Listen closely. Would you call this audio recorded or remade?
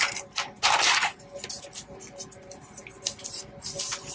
recorded